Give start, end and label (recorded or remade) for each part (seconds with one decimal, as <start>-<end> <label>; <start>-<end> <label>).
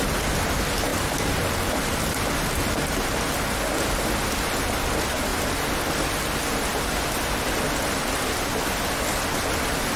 0.0-0.9 recorded; 0.9-2.9 remade; 2.9-10.0 recorded